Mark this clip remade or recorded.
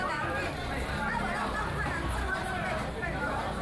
remade